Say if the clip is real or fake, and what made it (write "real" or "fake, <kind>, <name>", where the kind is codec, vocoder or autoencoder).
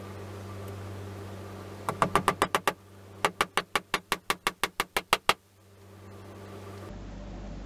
real